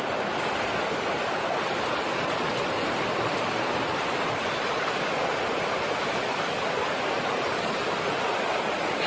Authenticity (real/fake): real